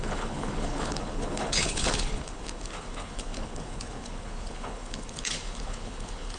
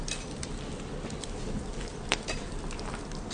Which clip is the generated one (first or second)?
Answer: first